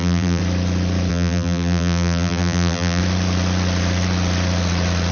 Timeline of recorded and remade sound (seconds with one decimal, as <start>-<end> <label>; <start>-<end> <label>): 0.0-0.4 remade; 0.4-1.1 recorded; 1.1-3.0 remade; 3.0-5.1 recorded